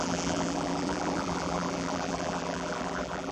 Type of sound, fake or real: fake